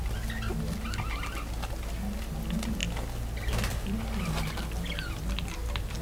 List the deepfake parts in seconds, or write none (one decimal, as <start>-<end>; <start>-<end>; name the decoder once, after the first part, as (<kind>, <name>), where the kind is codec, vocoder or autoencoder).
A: none